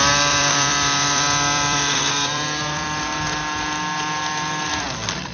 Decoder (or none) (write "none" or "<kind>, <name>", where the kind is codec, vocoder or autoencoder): vocoder, BigVGAN v2